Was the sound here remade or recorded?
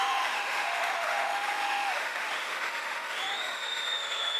remade